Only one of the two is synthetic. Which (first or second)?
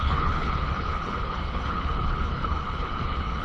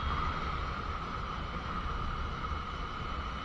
first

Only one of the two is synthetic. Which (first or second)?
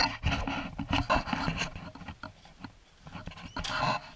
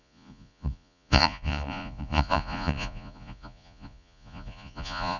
second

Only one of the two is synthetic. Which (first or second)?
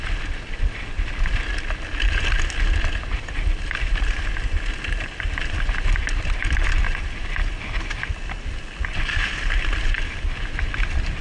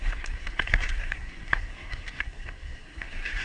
second